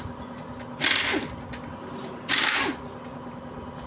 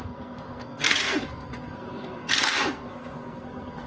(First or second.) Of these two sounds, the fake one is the second